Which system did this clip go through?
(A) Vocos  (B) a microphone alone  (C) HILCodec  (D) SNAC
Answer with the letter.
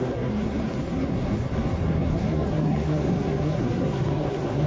D